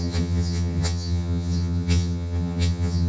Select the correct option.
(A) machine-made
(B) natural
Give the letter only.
A